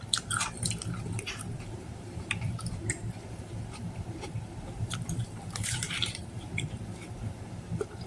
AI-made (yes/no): yes